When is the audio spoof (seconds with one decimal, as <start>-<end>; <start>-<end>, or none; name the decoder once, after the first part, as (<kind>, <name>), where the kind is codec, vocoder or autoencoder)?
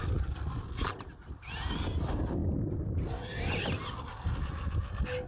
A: none